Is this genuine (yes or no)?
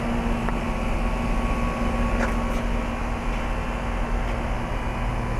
yes